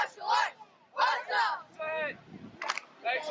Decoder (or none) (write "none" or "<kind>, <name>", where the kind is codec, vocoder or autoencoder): none